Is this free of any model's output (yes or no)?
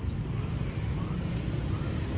yes